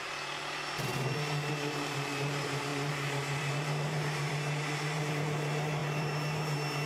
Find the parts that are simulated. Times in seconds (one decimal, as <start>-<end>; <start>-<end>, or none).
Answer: 0.0-0.9; 1.5-6.9